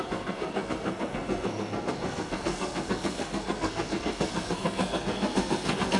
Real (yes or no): no